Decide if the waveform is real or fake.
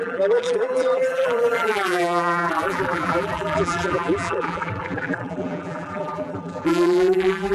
fake